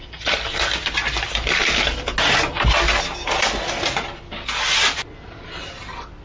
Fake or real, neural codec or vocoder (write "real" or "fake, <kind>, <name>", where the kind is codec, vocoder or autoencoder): real